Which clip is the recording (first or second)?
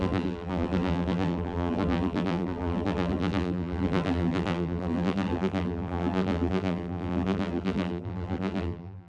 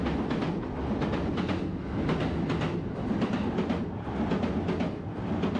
second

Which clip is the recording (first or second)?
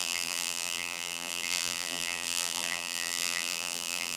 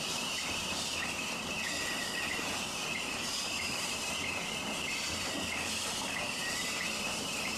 second